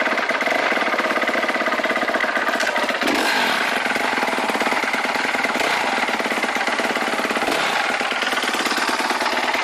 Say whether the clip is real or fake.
real